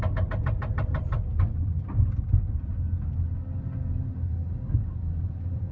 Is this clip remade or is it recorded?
recorded